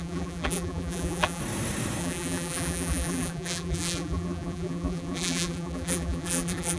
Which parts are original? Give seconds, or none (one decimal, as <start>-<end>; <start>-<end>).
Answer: 1.4-2.0